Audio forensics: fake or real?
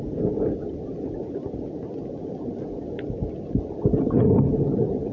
real